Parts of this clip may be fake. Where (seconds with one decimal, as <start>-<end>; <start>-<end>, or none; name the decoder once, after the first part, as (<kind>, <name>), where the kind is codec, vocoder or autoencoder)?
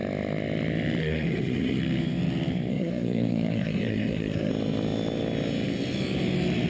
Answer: 1.0-1.8 (codec, SNAC); 2.7-4.5